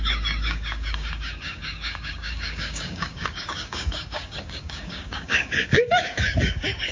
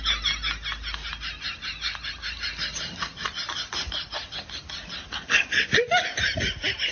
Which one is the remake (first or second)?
first